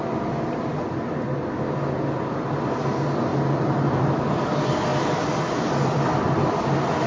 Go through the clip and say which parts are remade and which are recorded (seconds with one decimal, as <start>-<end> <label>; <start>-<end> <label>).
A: 0.0-3.3 recorded; 3.3-4.4 remade; 4.4-4.9 recorded; 4.9-5.7 remade; 5.7-7.1 recorded